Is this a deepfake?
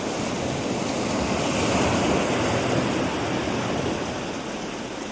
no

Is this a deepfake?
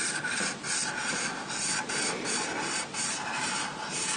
no